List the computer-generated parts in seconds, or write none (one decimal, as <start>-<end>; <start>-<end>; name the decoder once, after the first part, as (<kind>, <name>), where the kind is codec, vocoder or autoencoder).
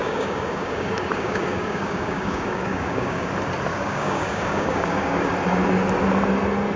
0.0-3.3 (codec, DAC); 3.7-5.3